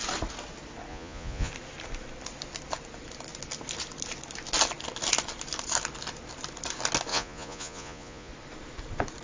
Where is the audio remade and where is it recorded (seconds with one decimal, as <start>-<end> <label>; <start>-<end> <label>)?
0.0-0.9 recorded; 0.9-1.5 remade; 1.5-7.1 recorded; 7.1-8.3 remade; 8.3-9.2 recorded